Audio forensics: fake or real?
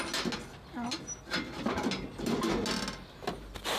real